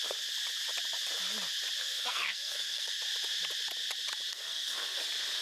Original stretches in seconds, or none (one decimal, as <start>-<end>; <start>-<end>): 0.0-1.8; 3.0-4.3; 5.0-5.4